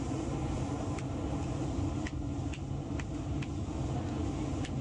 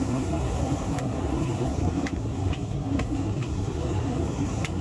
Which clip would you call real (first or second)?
first